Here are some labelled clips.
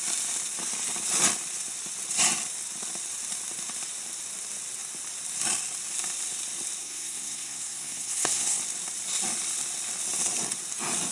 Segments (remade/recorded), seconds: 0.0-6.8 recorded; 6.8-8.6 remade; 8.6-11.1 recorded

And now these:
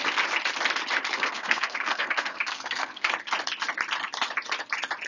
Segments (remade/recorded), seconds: 0.0-1.1 recorded; 1.1-3.1 remade; 3.1-5.1 recorded

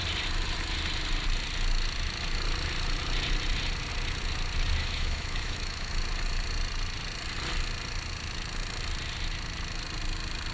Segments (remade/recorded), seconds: 0.0-4.8 recorded; 4.8-5.9 remade; 5.9-10.5 recorded

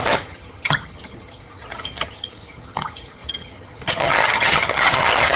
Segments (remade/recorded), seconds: 0.0-5.4 remade

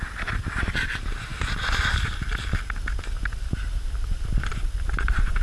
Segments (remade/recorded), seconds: 0.0-1.3 remade; 1.3-4.5 recorded; 4.5-5.4 remade

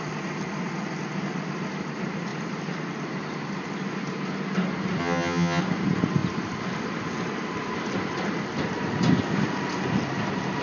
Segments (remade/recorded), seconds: 0.0-5.0 recorded; 5.0-5.6 remade; 5.6-10.6 recorded

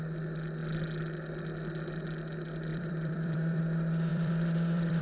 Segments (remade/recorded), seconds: 0.0-2.7 recorded; 2.7-3.6 remade; 3.6-4.1 recorded; 4.1-5.0 remade